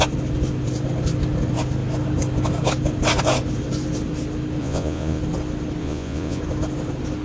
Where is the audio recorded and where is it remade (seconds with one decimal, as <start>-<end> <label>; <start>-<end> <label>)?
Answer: 0.0-4.6 recorded; 4.6-5.2 remade; 5.2-5.8 recorded; 5.8-6.4 remade; 6.4-7.2 recorded